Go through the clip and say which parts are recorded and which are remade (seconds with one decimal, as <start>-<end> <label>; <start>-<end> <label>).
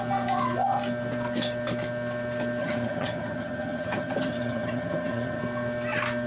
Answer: 0.0-2.6 recorded; 2.6-5.4 remade; 5.4-6.3 recorded